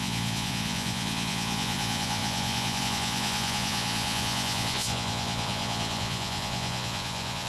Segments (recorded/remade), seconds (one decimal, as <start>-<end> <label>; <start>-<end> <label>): 0.0-7.5 remade